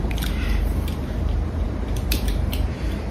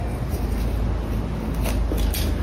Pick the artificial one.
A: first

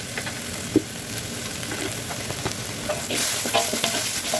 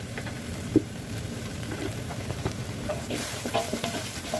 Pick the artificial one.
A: second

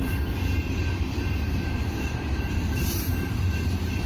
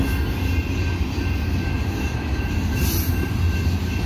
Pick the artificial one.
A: first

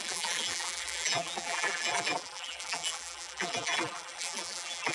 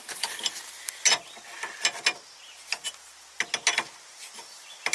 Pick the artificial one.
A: first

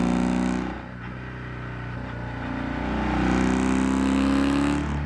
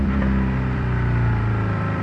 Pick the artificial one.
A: second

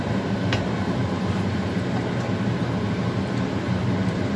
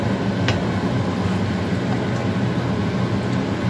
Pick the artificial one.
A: first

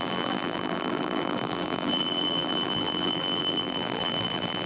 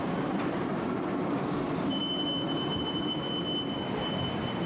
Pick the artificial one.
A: first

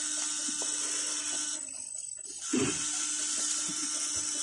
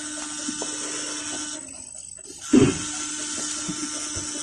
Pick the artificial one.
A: first